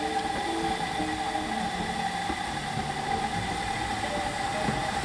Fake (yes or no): no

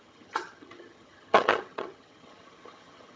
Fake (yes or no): yes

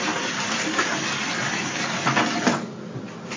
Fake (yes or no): no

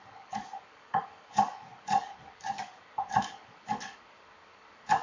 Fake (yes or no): yes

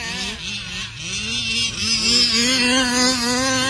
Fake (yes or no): no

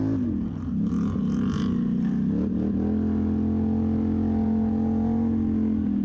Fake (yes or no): no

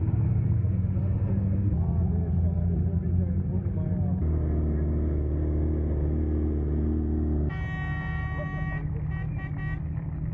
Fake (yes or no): no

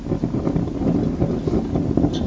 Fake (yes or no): no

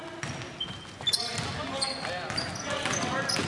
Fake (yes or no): no